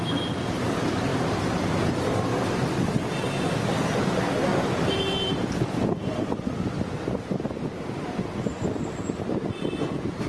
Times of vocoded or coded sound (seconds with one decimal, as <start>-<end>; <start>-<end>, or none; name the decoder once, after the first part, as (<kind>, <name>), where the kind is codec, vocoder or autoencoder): none